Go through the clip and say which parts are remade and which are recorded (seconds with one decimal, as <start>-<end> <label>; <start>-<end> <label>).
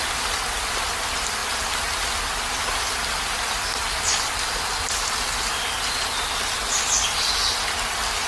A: 0.0-8.3 recorded